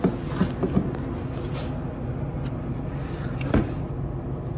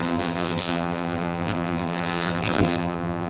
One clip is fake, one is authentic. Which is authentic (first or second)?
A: first